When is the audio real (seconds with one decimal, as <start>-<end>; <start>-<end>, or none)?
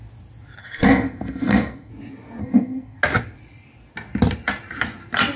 0.0-0.6; 1.9-2.4; 3.0-5.4